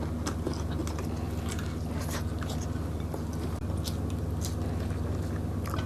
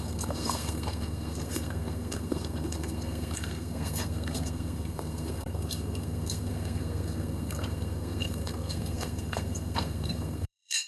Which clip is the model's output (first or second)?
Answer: second